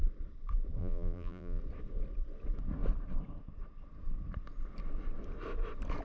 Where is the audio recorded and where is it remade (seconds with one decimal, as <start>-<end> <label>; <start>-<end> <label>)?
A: 0.0-0.8 recorded; 0.8-1.6 remade; 1.6-6.0 recorded